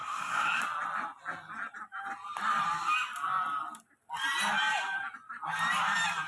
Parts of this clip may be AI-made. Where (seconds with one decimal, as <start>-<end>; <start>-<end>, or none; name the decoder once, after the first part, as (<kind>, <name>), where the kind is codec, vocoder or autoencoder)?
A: 0.0-0.6 (codec, SNAC)